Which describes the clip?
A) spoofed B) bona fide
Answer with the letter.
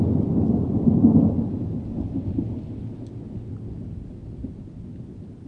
B